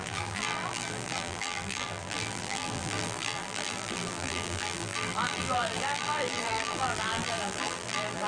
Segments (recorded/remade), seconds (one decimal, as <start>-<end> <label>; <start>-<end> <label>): 0.0-8.3 remade